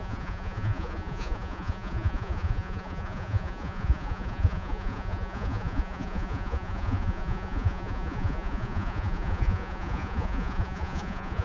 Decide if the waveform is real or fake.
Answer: fake